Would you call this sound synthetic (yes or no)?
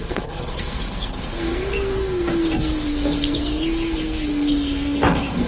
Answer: yes